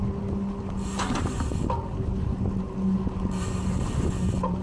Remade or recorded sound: recorded